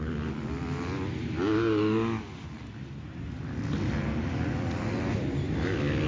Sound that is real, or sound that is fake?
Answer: real